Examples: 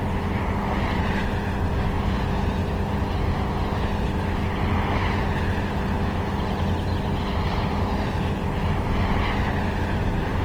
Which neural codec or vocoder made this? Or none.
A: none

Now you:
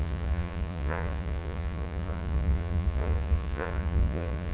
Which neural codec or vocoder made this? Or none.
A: vocoder, Vocos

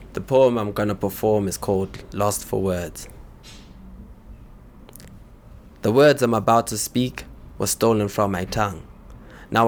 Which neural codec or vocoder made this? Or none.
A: none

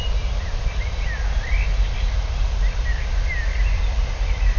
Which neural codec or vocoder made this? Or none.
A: none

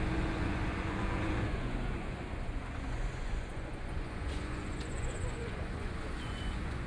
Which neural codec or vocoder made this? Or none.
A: vocoder, Vocos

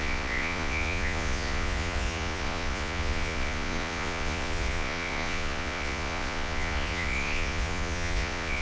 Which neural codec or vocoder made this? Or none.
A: vocoder, Vocos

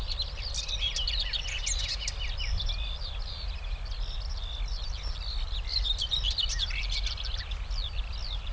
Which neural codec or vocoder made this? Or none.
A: none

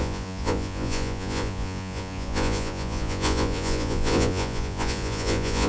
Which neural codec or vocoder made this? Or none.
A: vocoder, Vocos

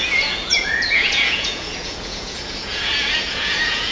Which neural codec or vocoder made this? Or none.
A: vocoder, Vocos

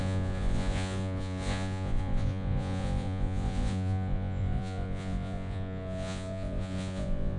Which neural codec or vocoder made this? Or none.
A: vocoder, Vocos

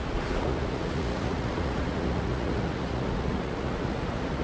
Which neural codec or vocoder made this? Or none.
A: vocoder, Vocos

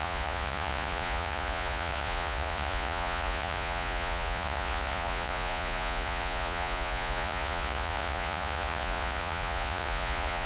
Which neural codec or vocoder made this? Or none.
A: vocoder, Vocos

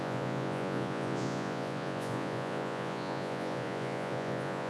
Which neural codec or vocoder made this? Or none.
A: vocoder, Vocos